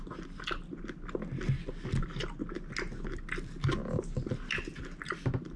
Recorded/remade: recorded